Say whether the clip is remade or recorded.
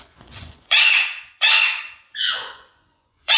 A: remade